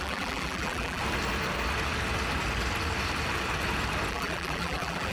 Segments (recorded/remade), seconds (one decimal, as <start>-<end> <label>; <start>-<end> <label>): 0.0-1.0 remade; 1.0-4.1 recorded; 4.1-5.1 remade